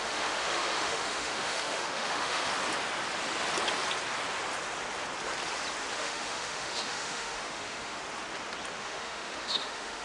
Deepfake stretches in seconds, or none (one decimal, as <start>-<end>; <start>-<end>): 0.0-2.5; 5.9-8.0; 8.8-10.0